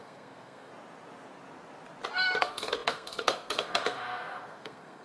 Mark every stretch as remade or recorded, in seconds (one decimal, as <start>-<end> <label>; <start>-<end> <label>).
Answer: 0.0-0.7 remade; 0.7-2.4 recorded; 2.4-5.0 remade